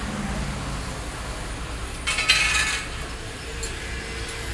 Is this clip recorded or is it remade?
recorded